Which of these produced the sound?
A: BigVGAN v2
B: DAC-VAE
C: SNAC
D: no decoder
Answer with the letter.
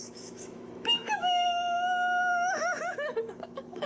B